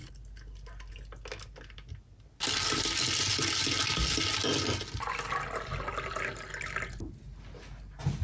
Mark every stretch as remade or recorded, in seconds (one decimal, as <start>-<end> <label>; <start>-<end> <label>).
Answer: 0.0-8.2 recorded